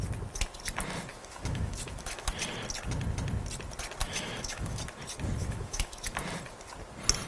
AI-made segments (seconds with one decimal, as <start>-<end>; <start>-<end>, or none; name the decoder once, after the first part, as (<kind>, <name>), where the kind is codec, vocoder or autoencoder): 1.1-2.3 (autoencoder, DAC-VAE); 4.0-4.8; 5.4-6.2